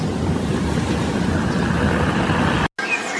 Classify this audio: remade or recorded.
recorded